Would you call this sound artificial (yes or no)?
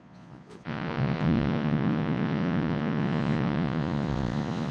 yes